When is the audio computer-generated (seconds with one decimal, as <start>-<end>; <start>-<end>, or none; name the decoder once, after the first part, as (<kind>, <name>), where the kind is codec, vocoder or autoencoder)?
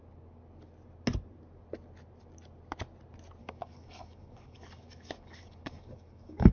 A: 3.4-6.5 (codec, DAC)